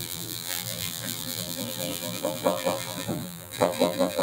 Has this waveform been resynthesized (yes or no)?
yes